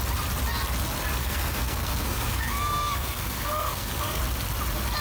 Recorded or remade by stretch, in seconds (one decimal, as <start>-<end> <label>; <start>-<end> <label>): 0.0-1.2 recorded; 1.2-4.2 remade; 4.2-5.0 recorded